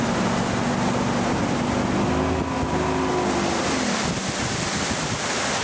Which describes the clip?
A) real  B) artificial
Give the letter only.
A